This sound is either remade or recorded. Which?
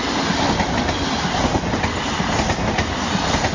recorded